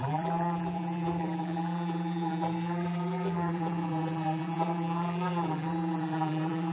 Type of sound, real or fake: fake